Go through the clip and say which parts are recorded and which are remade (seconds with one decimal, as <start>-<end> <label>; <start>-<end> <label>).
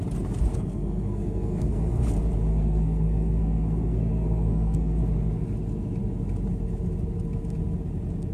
0.0-0.5 recorded; 0.5-2.0 remade; 2.0-2.5 recorded; 2.5-5.0 remade; 5.0-8.3 recorded